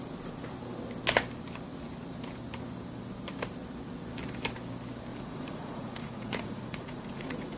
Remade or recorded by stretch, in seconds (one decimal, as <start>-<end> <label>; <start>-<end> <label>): 0.0-5.1 recorded; 5.1-7.6 remade